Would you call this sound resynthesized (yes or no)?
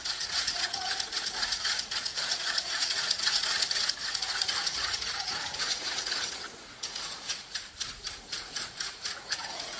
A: yes